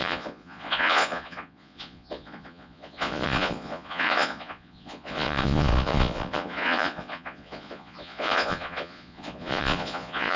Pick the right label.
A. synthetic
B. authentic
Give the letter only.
A